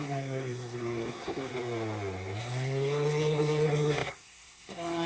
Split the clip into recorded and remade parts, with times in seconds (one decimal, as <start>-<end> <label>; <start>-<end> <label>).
0.0-1.5 remade; 1.5-2.4 recorded; 2.4-5.1 remade